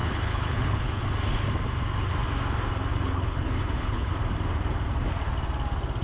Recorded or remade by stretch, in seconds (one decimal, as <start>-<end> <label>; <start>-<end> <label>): 0.0-1.0 remade; 1.0-2.9 recorded; 2.9-4.1 remade; 4.1-6.0 recorded